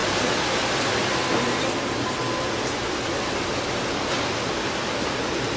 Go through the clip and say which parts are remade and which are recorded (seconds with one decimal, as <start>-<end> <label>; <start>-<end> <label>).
0.0-5.6 recorded